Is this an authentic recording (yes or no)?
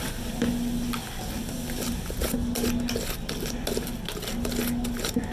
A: yes